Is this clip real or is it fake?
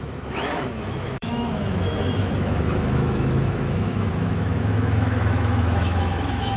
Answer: fake